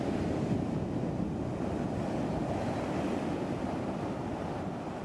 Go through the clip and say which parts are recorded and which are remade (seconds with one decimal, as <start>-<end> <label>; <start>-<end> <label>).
0.0-2.6 recorded; 2.6-4.1 remade; 4.1-5.0 recorded